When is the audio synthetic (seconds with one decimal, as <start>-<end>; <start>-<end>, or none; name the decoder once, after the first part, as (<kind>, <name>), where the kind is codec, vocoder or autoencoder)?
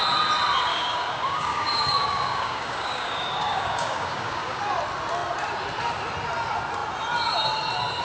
0.7-4.6 (codec, DAC)